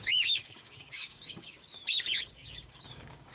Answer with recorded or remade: remade